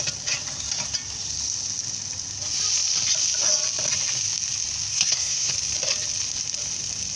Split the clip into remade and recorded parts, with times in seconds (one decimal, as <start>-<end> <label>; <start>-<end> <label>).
0.0-4.9 recorded; 4.9-5.5 remade; 5.5-7.2 recorded